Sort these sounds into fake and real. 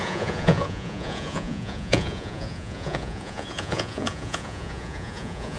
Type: fake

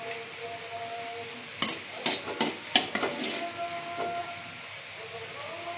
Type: real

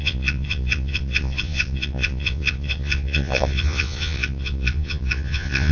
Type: fake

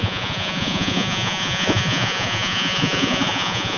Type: fake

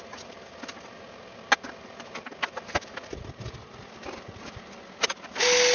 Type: real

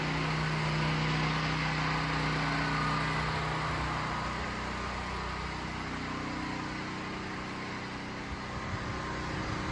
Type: real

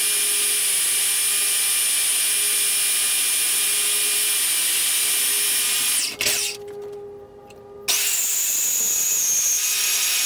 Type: real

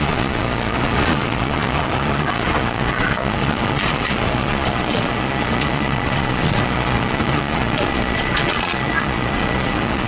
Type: fake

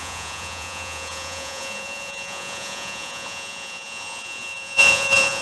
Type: fake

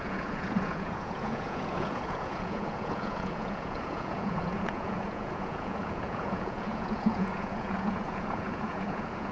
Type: fake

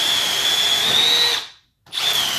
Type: real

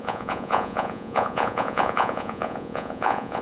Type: fake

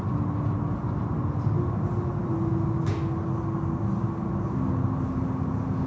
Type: real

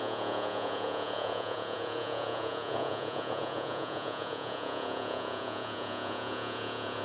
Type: fake